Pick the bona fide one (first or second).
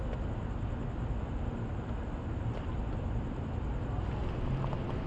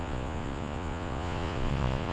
first